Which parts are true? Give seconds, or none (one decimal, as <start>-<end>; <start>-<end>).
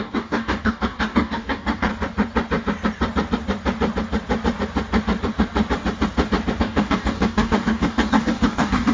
1.9-6.6